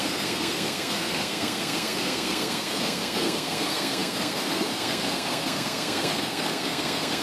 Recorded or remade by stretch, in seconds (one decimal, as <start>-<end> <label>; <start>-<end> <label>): 0.0-7.2 remade

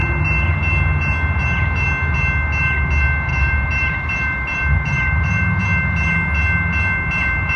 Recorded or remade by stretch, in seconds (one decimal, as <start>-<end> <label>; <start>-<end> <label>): 0.0-3.3 recorded; 3.3-5.6 remade; 5.6-7.6 recorded

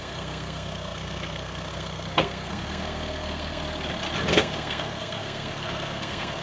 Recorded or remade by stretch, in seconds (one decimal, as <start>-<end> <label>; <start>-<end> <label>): 0.0-3.6 remade; 3.6-4.3 recorded; 4.3-6.4 remade

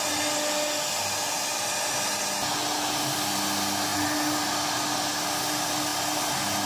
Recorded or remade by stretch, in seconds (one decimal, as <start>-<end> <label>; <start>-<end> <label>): 0.0-6.7 recorded

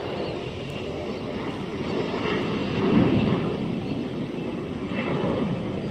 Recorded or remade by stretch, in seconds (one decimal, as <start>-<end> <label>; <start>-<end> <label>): 0.0-2.6 remade; 2.6-4.3 recorded; 4.3-5.9 remade

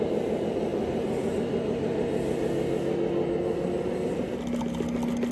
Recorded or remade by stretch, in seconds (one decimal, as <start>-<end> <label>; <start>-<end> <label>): 0.0-5.3 recorded